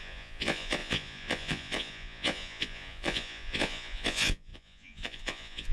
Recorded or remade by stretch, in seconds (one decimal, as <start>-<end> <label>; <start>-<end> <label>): 0.0-5.7 remade